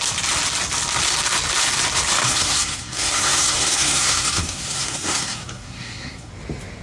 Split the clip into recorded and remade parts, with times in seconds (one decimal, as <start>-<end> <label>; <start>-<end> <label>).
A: 0.0-2.2 recorded; 2.2-6.3 remade; 6.3-6.8 recorded